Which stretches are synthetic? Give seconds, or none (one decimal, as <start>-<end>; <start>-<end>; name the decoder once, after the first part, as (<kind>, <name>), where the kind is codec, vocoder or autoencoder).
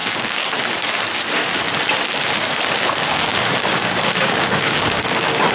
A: 0.0-1.1 (codec, DAC); 2.9-5.5